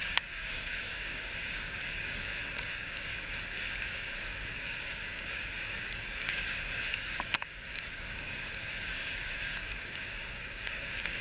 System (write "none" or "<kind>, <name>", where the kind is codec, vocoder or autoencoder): codec, DAC